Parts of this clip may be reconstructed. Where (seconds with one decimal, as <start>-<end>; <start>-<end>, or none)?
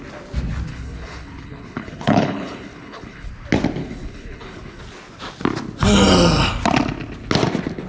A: 0.7-3.3; 3.8-4.8